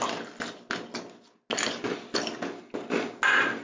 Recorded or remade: recorded